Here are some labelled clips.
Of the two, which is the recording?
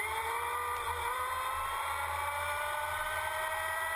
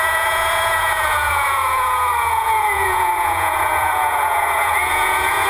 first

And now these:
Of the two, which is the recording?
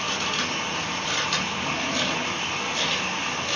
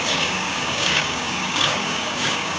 first